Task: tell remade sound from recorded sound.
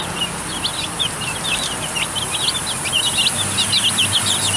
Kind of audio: recorded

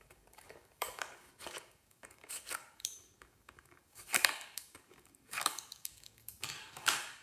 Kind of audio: remade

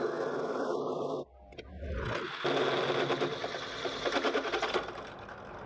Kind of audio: recorded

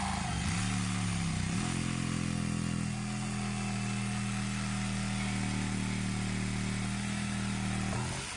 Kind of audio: recorded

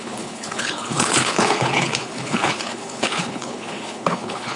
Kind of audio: remade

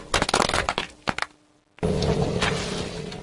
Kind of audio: recorded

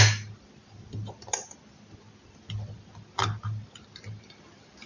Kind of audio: recorded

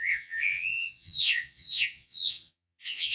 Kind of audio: remade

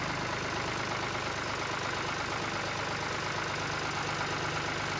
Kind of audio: recorded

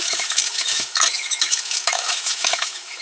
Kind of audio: remade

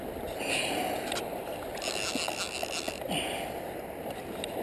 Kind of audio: recorded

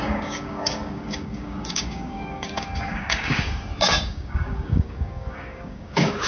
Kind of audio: remade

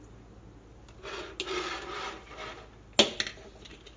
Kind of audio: recorded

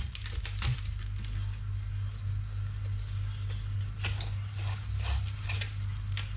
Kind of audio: recorded